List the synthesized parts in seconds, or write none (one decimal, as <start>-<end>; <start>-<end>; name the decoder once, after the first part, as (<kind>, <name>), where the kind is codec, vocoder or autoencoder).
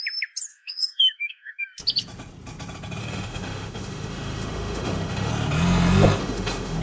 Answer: 0.5-1.6 (autoencoder, DAC-VAE); 3.0-5.3; 6.2-6.8